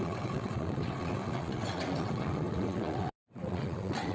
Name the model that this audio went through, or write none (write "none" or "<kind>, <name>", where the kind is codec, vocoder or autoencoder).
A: vocoder, WaveNeXt